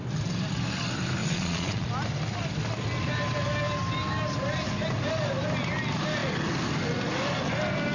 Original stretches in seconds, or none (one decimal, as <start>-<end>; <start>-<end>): 0.0-1.2; 1.9-7.9